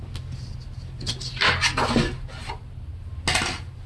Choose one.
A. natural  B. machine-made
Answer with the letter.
A